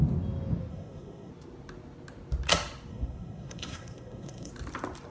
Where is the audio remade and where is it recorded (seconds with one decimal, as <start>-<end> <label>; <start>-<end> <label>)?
0.0-0.7 recorded; 0.7-1.3 remade; 1.3-2.9 recorded; 2.9-4.5 remade; 4.5-5.1 recorded